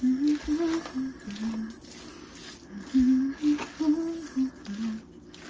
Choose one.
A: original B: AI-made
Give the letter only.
A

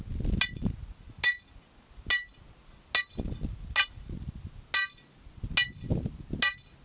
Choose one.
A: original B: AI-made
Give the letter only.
A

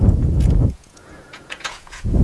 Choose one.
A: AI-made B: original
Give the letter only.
A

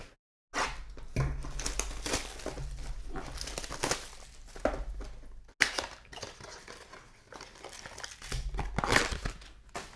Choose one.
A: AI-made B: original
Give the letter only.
B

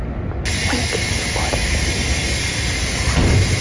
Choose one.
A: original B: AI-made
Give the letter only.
A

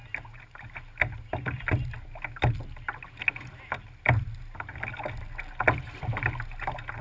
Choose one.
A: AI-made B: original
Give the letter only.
B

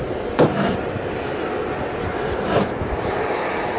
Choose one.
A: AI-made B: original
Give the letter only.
B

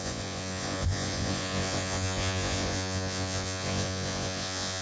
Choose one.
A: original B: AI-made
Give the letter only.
B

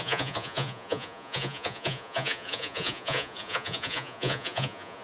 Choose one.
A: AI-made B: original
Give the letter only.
A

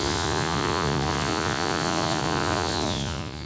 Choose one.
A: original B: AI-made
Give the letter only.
B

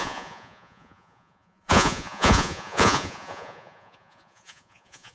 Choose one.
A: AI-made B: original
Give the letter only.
A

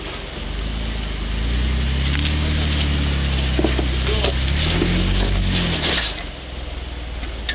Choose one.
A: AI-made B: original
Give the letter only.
B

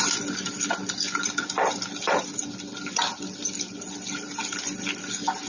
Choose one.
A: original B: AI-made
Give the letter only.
A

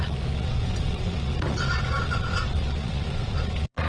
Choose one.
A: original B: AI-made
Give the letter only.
B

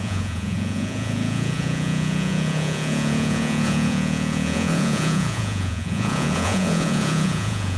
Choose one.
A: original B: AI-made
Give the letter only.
B